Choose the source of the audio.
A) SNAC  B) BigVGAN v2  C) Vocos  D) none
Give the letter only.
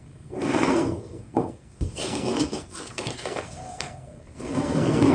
A